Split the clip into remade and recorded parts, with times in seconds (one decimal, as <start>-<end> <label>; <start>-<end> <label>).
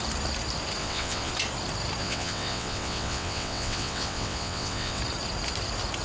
0.0-0.8 recorded; 0.8-1.3 remade; 1.3-2.0 recorded; 2.0-5.0 remade; 5.0-6.0 recorded